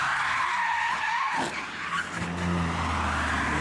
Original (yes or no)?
yes